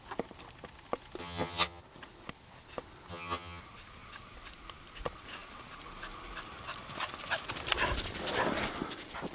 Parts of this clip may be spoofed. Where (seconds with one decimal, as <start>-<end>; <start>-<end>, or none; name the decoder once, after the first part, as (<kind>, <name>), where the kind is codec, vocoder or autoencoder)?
1.2-1.8 (vocoder, HiFi-GAN); 3.1-3.6